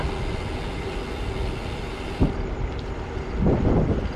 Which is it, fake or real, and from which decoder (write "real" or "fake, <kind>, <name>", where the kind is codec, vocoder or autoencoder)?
real